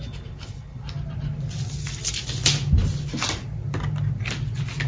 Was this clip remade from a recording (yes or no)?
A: no